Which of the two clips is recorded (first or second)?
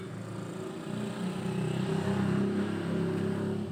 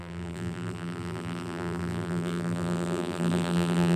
first